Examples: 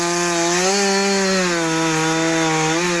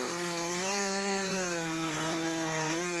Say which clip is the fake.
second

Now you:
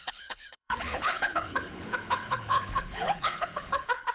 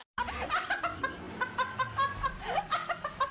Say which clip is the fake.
first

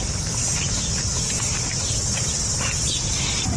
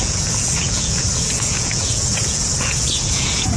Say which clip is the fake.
second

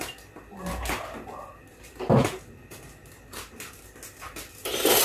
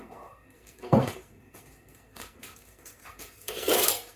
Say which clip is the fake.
second